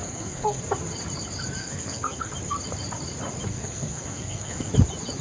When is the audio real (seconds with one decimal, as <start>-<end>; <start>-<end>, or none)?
0.6-1.6; 2.3-3.5; 4.7-5.2